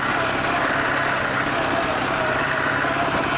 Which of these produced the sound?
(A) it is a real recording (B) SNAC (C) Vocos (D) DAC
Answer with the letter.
A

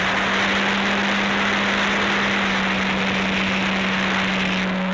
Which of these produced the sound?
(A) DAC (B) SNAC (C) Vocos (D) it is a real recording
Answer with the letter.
D